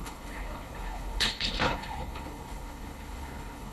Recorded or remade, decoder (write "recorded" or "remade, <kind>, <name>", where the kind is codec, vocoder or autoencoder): remade, codec, HILCodec